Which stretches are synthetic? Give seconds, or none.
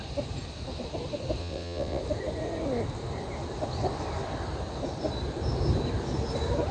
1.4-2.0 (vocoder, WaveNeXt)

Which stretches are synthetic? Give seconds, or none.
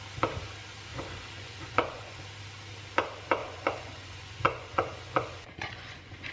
0.9-2.2 (vocoder, Vocos); 3.4-6.3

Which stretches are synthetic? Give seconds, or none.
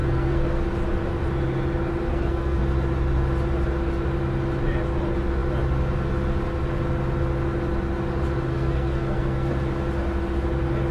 0.0-0.6 (codec, SNAC); 2.1-2.6; 8.5-9.5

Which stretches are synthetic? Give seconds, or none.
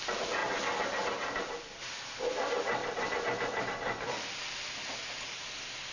2.8-4.4 (vocoder, BigVGAN v2)